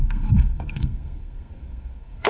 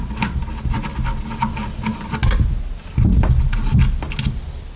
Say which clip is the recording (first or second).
second